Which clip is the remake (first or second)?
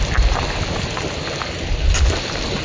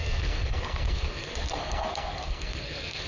second